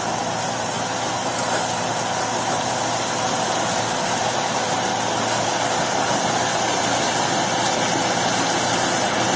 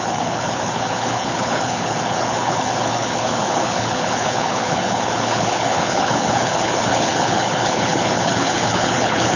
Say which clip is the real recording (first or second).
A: first